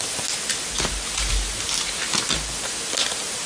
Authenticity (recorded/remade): recorded